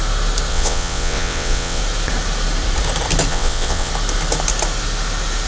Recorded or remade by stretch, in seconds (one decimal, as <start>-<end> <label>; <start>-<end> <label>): 0.0-0.5 recorded; 0.5-1.8 remade; 1.8-3.3 recorded; 3.3-3.9 remade; 3.9-5.5 recorded